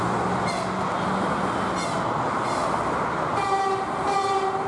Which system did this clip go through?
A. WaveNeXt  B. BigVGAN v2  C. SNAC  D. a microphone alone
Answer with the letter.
D